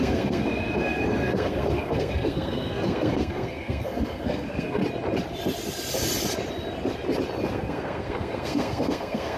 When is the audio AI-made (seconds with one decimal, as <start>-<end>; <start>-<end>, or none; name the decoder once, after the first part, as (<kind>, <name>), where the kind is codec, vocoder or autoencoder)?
0.0-4.8 (codec, SNAC); 7.5-9.4

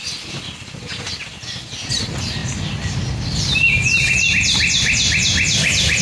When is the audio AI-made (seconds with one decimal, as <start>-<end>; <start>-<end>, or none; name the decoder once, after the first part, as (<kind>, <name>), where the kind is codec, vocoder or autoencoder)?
none

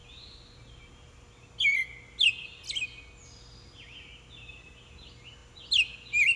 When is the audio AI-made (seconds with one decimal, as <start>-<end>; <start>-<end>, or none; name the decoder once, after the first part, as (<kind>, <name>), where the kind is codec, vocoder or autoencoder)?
none